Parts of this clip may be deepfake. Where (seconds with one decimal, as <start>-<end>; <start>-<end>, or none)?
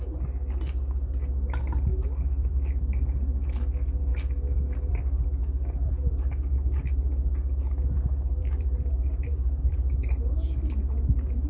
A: 8.4-10.3